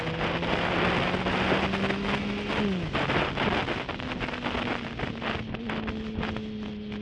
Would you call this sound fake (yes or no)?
no